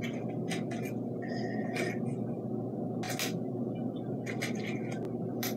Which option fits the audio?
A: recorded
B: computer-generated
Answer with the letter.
A